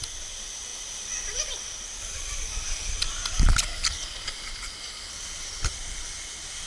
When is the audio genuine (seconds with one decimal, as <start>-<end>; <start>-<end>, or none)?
0.0-6.7